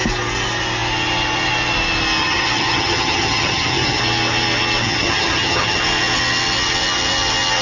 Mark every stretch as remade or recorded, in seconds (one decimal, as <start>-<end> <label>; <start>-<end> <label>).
0.0-2.2 recorded; 2.2-4.0 remade; 4.0-4.8 recorded; 4.8-5.8 remade; 5.8-7.6 recorded